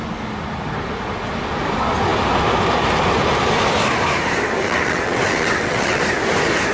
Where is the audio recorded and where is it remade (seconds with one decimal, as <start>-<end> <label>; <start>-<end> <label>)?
0.0-4.6 recorded; 4.6-6.0 remade; 6.0-6.7 recorded